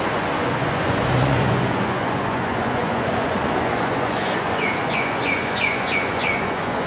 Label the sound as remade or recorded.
remade